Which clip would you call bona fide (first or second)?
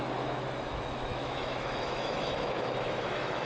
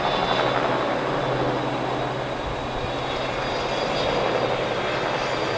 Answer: second